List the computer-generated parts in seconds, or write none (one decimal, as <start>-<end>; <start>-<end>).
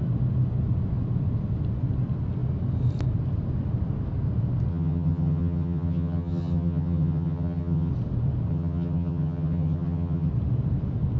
4.7-7.9; 8.5-10.3